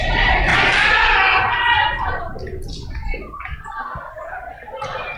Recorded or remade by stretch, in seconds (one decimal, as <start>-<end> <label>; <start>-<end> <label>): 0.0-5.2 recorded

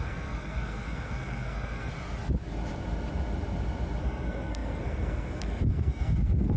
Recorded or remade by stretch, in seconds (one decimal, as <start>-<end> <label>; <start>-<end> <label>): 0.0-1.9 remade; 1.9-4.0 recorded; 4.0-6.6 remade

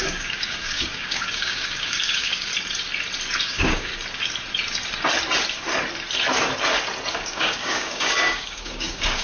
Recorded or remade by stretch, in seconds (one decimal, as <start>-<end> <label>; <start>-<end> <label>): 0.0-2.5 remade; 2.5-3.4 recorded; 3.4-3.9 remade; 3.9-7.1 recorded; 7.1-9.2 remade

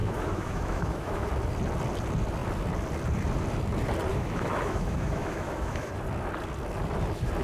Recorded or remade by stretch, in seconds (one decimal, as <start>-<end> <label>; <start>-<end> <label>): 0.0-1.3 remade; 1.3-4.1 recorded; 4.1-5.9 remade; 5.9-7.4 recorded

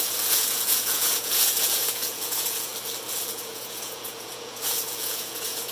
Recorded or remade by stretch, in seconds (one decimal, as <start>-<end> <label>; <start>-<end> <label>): 0.0-2.7 remade; 2.7-3.3 recorded; 3.3-5.7 remade

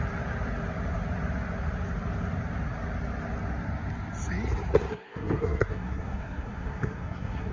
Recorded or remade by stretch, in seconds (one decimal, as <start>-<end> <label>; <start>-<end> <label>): 0.0-4.9 recorded; 4.9-7.5 remade